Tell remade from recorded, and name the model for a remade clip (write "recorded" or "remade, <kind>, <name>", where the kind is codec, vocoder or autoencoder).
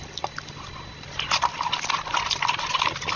recorded